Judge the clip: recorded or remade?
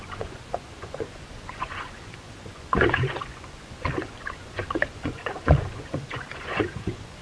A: remade